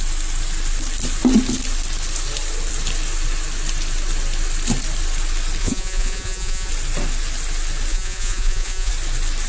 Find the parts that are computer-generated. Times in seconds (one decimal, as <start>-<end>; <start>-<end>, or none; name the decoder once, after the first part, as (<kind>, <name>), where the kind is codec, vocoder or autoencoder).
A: 5.6-6.7 (vocoder, Vocos); 7.9-8.9